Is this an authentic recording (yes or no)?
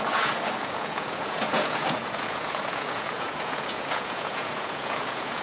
no